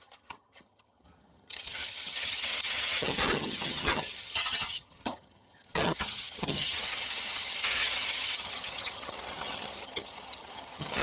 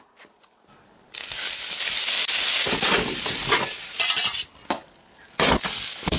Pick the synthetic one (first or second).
first